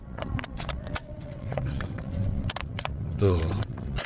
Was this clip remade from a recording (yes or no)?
yes